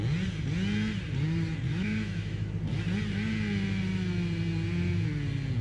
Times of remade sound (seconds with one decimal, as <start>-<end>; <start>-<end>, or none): 1.7-2.5